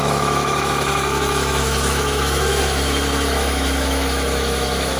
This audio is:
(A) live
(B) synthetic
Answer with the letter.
B